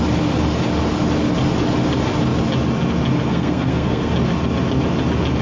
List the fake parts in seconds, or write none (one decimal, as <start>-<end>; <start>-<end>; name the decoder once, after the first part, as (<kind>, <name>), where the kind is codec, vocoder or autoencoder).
3.3-4.1 (codec, SNAC)

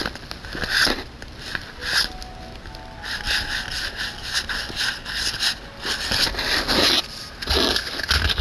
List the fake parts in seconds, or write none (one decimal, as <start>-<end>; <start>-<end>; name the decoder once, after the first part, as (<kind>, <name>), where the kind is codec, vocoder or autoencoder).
none

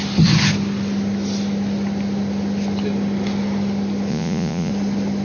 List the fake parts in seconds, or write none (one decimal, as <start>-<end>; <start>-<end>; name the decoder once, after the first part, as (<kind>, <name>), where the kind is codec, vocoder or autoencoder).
4.1-4.7 (vocoder, Vocos)

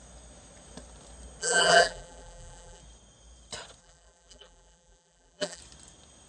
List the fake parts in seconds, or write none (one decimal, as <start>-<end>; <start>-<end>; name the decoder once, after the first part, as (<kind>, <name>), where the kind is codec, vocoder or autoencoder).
1.4-2.8 (vocoder, BigVGAN v2); 3.8-5.6

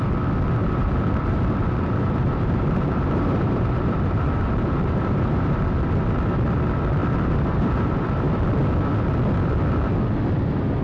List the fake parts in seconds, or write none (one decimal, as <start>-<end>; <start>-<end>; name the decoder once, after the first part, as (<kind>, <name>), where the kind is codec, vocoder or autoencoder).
0.6-5.6 (vocoder, BigVGAN v2); 7.0-8.4

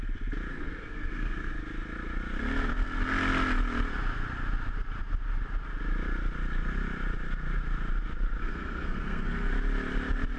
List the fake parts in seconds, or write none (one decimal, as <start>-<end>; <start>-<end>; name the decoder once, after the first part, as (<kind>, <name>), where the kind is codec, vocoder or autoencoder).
0.5-1.5 (codec, SNAC); 8.4-9.5

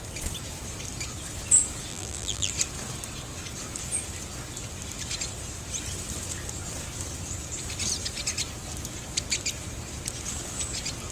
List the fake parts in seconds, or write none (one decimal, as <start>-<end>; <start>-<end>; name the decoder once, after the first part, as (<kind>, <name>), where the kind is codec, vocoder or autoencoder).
1.9-2.5 (vocoder, BigVGAN v2)